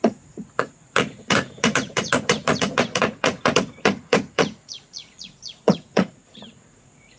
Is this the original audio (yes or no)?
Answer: no